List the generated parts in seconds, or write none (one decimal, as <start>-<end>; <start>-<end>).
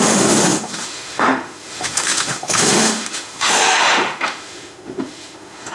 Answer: 0.0-5.7